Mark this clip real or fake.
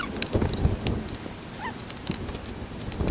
real